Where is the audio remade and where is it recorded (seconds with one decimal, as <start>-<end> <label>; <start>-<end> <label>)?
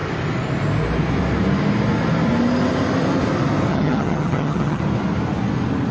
0.0-3.7 recorded; 3.7-4.8 remade; 4.8-5.9 recorded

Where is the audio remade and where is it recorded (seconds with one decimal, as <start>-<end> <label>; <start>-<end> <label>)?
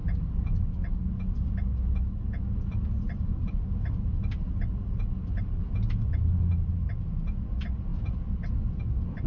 0.0-7.9 recorded; 7.9-8.8 remade; 8.8-9.3 recorded